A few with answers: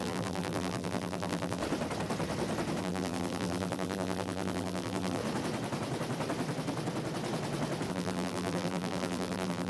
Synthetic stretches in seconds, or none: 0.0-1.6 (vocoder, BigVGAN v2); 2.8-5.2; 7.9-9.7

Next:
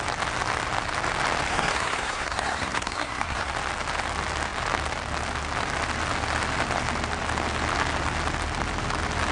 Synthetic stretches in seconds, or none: 1.5-3.5 (codec, SNAC)

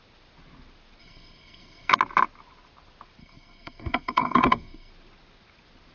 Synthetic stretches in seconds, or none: 1.0-1.9 (codec, SNAC); 3.2-4.9

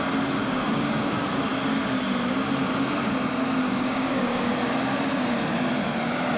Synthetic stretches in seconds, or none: 0.4-1.1 (codec, DAC); 3.6-4.5

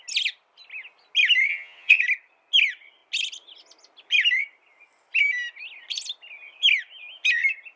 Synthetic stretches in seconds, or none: 1.5-2.0 (vocoder, HiFi-GAN)

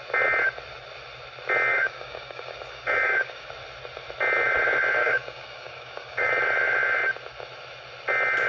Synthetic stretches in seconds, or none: 1.7-3.5 (codec, DAC); 5.0-6.3

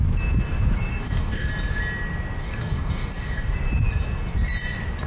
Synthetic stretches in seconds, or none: 0.9-1.5 (codec, DAC); 2.4-3.5

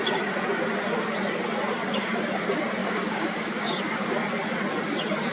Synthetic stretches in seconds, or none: 2.8-3.8 (codec, DAC)